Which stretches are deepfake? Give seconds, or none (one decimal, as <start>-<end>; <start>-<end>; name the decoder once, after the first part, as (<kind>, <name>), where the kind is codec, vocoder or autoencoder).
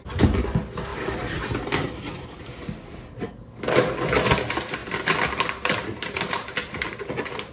0.9-3.3 (vocoder, BigVGAN v2); 4.8-7.0